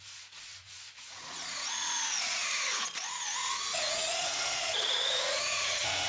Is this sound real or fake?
fake